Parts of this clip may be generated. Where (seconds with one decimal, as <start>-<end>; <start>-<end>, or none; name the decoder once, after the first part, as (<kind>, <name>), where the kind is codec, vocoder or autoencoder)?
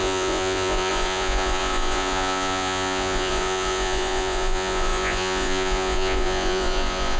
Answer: 0.0-7.2 (vocoder, Vocos)